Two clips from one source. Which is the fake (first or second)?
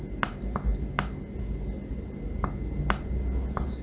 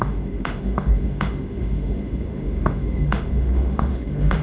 second